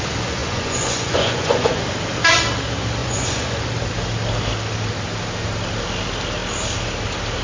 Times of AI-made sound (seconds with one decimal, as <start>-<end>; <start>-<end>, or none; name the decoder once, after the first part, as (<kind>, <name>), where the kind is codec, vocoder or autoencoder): 0.4-1.8 (vocoder, Vocos); 3.0-3.6